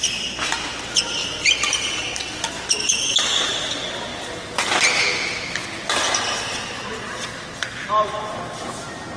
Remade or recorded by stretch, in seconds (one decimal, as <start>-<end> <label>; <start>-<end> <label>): 0.0-1.2 recorded; 1.2-2.6 remade; 2.6-9.2 recorded